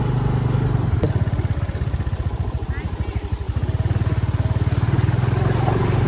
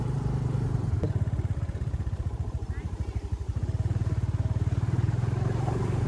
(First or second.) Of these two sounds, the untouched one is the first